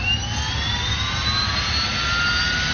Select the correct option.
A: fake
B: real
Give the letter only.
B